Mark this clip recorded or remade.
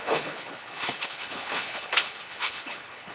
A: remade